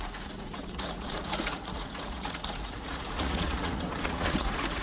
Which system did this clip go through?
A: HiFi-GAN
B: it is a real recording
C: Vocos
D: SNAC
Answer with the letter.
C